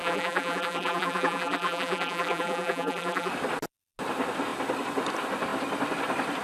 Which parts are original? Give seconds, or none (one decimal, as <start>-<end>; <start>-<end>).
3.3-6.4